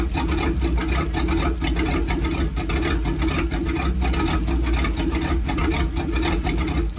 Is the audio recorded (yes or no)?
yes